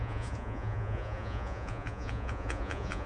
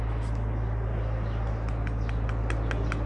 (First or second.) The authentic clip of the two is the second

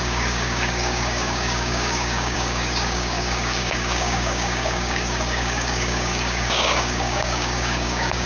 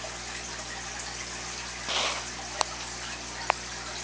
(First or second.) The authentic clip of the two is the second